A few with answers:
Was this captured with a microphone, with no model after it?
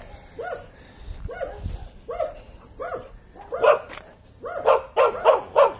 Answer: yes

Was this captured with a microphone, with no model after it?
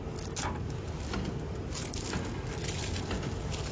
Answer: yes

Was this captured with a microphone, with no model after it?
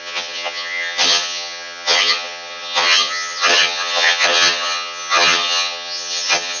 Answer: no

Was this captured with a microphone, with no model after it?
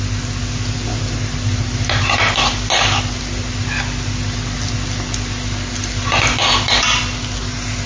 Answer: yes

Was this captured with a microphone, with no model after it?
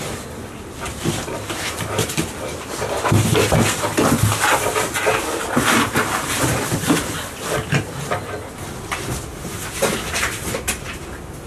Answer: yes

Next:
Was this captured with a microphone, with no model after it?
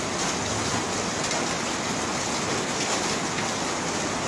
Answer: yes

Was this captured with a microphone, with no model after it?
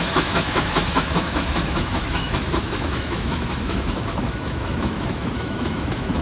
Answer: no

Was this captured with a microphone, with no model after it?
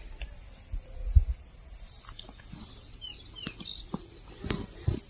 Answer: yes